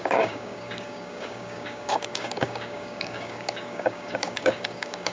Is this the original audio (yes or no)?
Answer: no